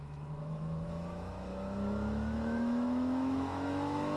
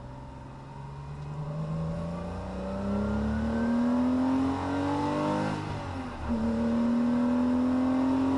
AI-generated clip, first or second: first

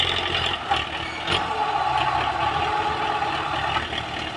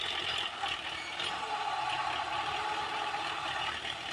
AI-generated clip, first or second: second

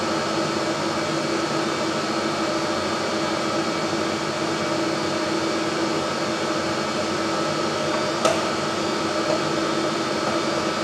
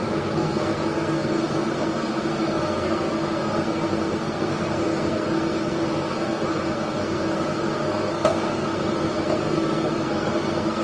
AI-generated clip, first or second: second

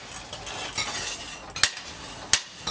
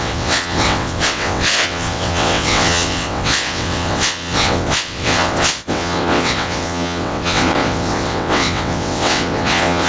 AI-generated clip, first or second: second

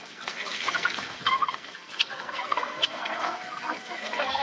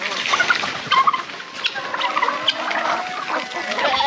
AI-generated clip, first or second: first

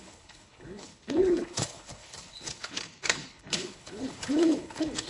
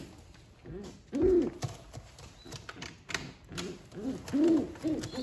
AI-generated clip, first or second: first